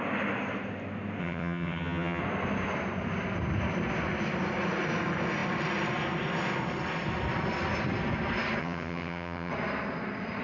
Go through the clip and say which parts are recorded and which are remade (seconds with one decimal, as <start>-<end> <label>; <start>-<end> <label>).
0.0-1.2 recorded; 1.2-2.2 remade; 2.2-8.6 recorded; 8.6-9.5 remade; 9.5-10.4 recorded